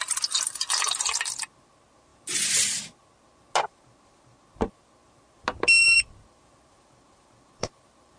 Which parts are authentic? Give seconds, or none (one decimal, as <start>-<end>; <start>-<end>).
0.0-5.8